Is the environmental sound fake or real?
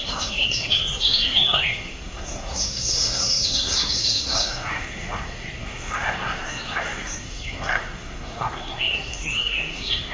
fake